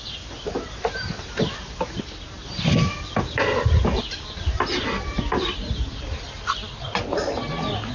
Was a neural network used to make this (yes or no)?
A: no